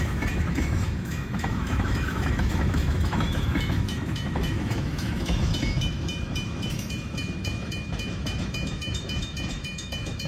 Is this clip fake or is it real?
fake